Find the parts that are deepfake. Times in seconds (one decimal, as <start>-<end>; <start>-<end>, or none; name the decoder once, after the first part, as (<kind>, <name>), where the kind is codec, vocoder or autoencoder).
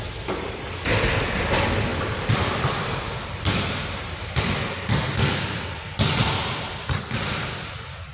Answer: 1.9-3.6 (vocoder, BigVGAN v2); 6.4-7.3